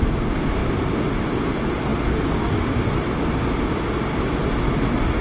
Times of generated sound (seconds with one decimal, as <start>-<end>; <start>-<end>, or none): none